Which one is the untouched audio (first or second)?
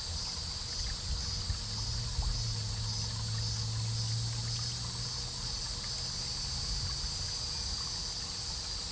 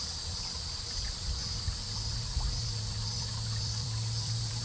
first